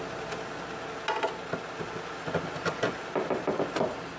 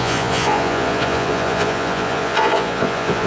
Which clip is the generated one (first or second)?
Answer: second